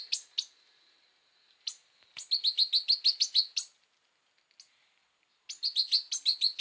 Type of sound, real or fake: real